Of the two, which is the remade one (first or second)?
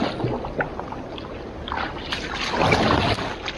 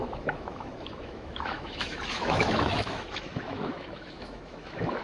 second